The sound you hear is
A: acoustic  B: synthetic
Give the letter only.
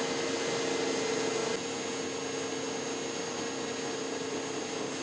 A